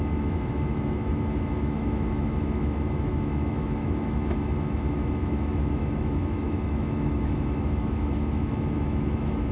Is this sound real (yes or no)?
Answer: no